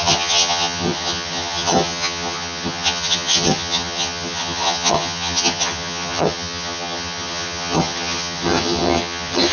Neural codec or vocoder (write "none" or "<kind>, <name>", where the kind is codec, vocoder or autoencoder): vocoder, HiFi-GAN